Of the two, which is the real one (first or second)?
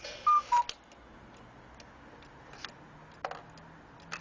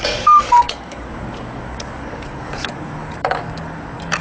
first